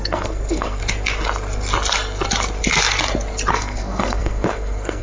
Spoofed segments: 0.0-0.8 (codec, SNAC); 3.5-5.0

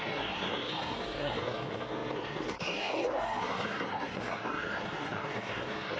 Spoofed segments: 0.0-6.0 (codec, SNAC)

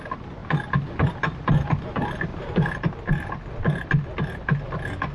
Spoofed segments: none

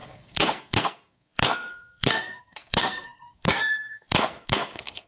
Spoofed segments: 0.0-5.1 (codec, SNAC)

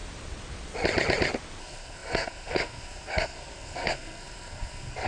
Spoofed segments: 1.6-5.1 (codec, SNAC)